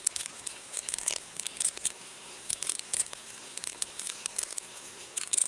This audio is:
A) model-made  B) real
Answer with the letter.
A